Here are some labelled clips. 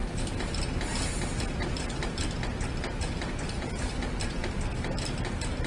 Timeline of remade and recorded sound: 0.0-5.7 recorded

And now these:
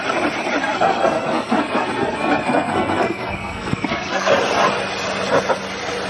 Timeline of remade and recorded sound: 0.0-0.6 recorded; 0.6-4.3 remade; 4.3-6.1 recorded